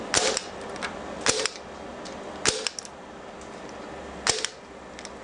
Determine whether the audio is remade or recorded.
recorded